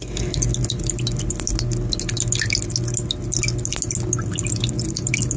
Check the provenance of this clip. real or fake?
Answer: real